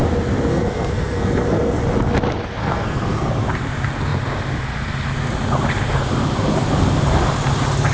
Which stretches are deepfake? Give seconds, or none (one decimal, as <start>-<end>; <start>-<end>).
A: 0.5-1.8; 2.6-3.3

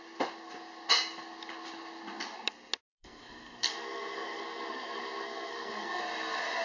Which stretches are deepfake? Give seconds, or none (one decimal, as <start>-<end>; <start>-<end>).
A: 2.9-6.0

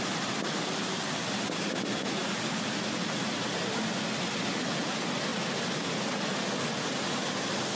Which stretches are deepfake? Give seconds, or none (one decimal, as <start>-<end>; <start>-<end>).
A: none

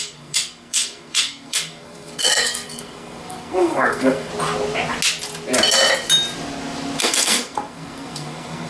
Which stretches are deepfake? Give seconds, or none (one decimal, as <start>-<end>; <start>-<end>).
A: 0.0-4.3; 7.0-8.7

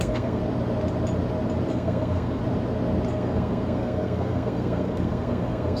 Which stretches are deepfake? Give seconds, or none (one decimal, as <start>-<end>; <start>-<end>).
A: 0.0-0.4; 1.7-2.4; 3.1-5.8